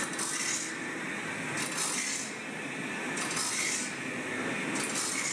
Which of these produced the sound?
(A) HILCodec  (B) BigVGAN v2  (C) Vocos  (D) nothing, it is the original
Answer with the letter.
D